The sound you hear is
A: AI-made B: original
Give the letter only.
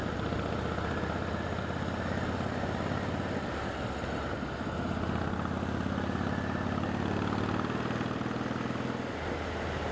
B